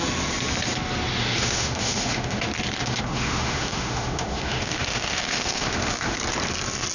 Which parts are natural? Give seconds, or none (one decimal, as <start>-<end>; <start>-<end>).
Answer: 0.0-1.2; 2.4-2.8; 6.2-6.9